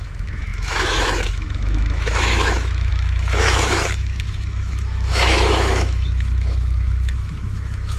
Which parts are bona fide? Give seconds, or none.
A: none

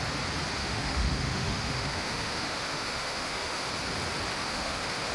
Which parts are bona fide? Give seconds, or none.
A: 0.0-0.6; 3.7-4.3

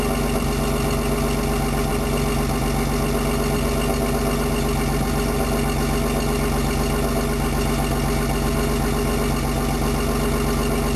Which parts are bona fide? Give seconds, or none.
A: 0.0-11.0